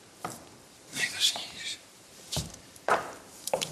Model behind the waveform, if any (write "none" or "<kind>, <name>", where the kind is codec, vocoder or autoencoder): vocoder, BigVGAN v2